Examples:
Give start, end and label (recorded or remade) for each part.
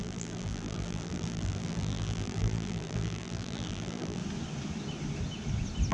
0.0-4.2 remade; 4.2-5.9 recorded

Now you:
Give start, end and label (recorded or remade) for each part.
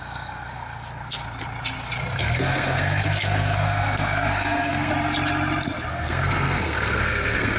0.0-1.2 remade; 1.2-2.2 recorded; 2.2-4.9 remade; 4.9-5.9 recorded; 5.9-7.6 remade